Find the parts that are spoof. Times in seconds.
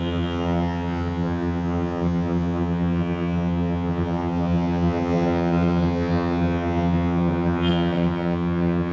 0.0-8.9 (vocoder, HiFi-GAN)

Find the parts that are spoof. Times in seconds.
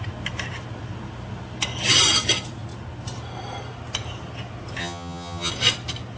4.8-5.5 (vocoder, HiFi-GAN)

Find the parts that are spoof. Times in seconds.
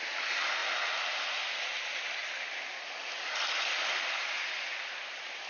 none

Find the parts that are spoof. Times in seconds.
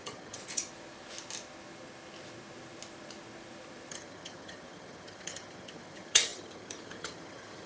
0.0-0.4 (vocoder, HiFi-GAN); 3.9-7.7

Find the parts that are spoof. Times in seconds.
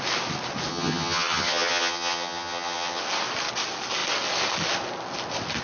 0.7-3.0 (vocoder, HiFi-GAN)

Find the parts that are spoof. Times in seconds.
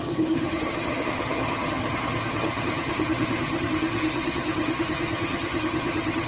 0.0-6.3 (vocoder, HiFi-GAN)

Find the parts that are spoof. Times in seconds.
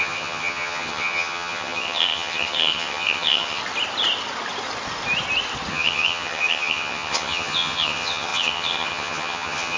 0.0-3.6 (vocoder, HiFi-GAN); 5.7-9.8